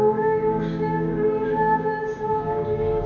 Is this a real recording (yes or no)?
no